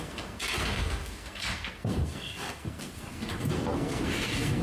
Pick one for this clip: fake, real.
fake